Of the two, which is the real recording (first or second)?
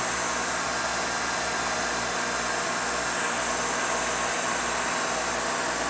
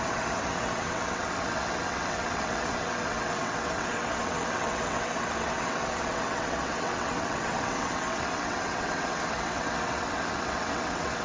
first